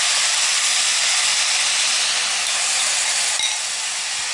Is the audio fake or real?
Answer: real